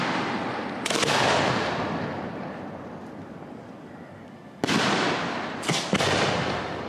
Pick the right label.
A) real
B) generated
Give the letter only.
A